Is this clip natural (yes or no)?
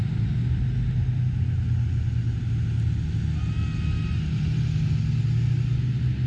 yes